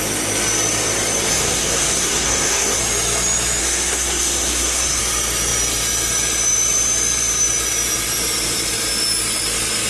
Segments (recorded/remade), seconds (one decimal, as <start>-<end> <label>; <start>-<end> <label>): 0.0-1.3 recorded; 1.3-2.8 remade; 2.8-3.6 recorded; 3.6-5.0 remade; 5.0-9.9 recorded